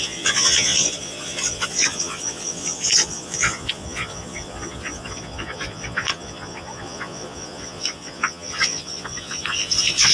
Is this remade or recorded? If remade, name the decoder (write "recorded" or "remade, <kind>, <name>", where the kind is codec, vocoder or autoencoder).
remade, vocoder, Vocos